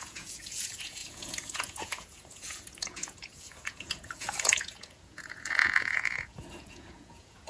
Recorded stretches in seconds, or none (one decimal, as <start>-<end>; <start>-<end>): none